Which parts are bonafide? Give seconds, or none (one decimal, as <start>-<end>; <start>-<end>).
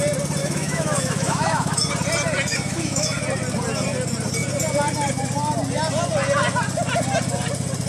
0.0-0.4; 1.9-2.5; 3.2-7.9